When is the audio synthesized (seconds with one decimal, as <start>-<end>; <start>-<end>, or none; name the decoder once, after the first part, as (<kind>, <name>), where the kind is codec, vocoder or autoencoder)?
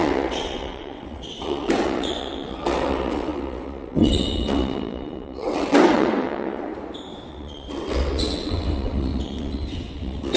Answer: 0.0-6.7 (vocoder, WaveNeXt); 7.3-10.4